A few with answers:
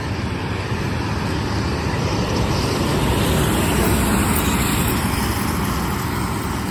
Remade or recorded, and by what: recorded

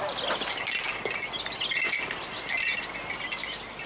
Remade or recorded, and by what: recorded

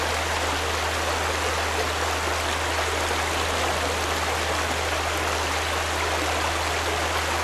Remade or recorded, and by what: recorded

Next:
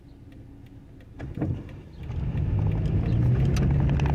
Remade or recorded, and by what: recorded